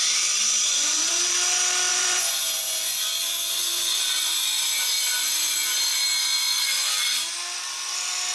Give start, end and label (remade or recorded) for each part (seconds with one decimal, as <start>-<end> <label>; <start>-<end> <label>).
0.0-0.7 recorded; 0.7-1.3 remade; 1.3-1.9 recorded; 1.9-4.6 remade; 4.6-6.2 recorded; 6.2-6.9 remade; 6.9-8.3 recorded